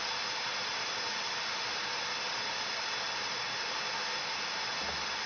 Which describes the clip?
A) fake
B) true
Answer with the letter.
B